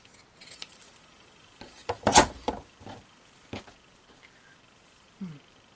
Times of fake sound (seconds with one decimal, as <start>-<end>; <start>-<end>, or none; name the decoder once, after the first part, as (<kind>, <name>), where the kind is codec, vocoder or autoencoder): 1.8-3.5 (vocoder, BigVGAN v2)